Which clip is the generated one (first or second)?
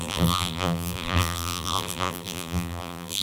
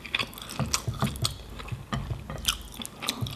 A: first